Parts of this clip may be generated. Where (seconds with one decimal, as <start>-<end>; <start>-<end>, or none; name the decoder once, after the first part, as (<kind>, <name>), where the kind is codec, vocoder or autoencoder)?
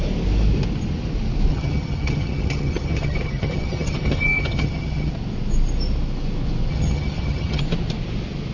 1.5-5.1 (vocoder, HiFi-GAN); 6.7-7.6